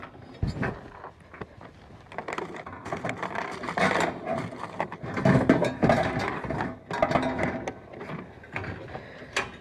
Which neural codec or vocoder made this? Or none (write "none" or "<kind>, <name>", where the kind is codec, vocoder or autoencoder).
none